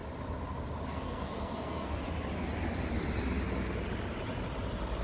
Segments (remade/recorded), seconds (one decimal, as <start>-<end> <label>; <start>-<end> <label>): 0.0-0.9 recorded; 0.9-2.0 remade; 2.0-5.0 recorded